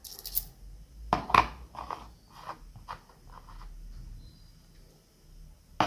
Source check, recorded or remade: recorded